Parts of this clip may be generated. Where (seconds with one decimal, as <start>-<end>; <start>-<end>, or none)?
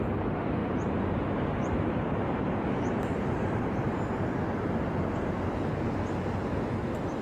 0.6-4.0